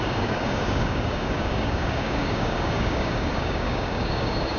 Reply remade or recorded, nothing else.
remade